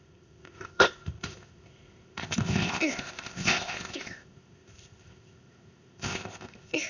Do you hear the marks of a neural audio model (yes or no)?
yes